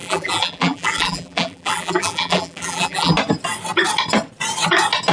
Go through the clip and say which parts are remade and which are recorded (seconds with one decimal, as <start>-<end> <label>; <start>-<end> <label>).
0.0-3.1 remade; 3.1-5.1 recorded